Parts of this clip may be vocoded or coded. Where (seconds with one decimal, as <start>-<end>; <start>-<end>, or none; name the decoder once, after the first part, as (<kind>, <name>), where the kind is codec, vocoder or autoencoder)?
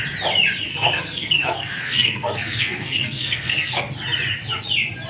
0.7-3.8 (codec, SNAC)